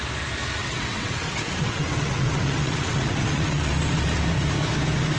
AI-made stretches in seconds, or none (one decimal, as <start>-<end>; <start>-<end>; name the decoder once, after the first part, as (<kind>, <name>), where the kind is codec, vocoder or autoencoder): 0.6-3.7 (vocoder, WaveNeXt)